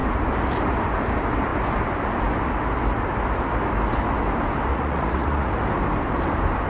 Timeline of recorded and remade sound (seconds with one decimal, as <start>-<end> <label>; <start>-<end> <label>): 0.0-4.7 recorded; 4.7-5.5 remade; 5.5-6.7 recorded